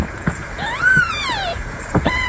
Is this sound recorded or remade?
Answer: remade